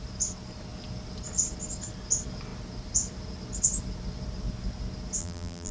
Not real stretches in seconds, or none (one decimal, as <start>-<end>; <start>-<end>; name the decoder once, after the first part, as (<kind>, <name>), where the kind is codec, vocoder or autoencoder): 5.2-5.7 (vocoder, BigVGAN v2)